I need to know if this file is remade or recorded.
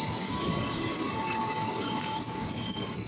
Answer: remade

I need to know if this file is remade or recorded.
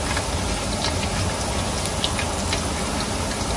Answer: recorded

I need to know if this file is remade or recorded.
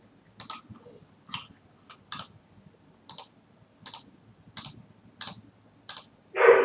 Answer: recorded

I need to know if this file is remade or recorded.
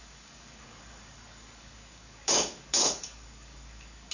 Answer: remade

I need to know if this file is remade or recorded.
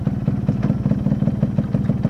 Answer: recorded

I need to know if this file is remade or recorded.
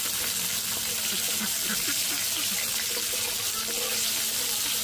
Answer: recorded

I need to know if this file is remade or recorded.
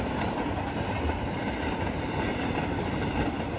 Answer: recorded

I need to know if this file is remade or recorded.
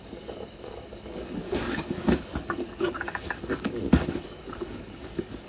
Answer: remade